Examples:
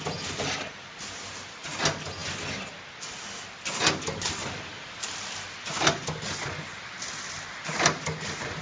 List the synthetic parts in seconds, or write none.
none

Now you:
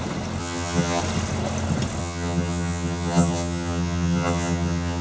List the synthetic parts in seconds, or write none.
0.4-1.0 (vocoder, HiFi-GAN); 2.0-5.0